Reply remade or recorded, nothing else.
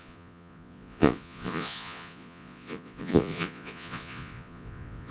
remade